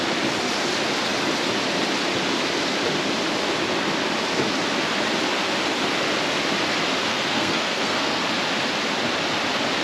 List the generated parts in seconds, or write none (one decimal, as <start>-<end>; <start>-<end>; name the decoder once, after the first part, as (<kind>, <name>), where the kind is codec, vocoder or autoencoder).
7.1-8.2 (codec, SNAC)